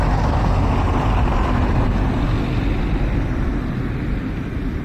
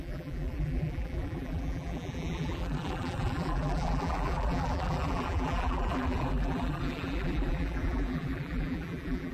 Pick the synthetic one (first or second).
second